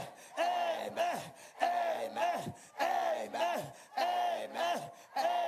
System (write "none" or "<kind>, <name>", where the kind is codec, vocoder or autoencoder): none